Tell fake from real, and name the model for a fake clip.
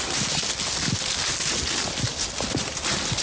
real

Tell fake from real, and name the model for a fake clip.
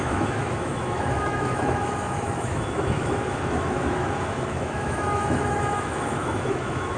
fake, autoencoder, DAC-VAE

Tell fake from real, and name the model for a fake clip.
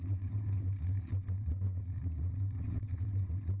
fake, vocoder, WaveNeXt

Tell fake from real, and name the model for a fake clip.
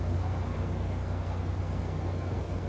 fake, codec, SNAC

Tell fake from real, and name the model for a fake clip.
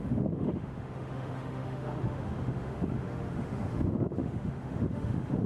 fake, autoencoder, DAC-VAE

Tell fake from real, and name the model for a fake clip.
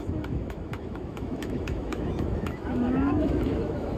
fake, autoencoder, DAC-VAE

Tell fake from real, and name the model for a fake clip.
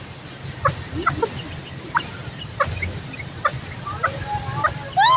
real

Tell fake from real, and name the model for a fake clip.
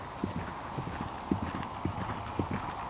real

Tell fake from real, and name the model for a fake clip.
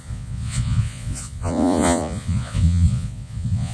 fake, vocoder, Vocos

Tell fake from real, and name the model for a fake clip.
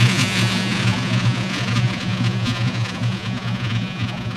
fake, vocoder, Vocos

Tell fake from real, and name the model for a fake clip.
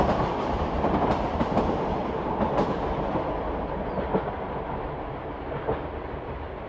fake, vocoder, BigVGAN v2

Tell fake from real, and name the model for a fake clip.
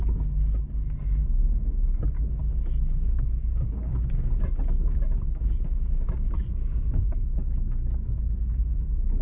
real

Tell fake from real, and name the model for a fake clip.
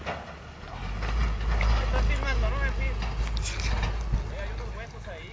real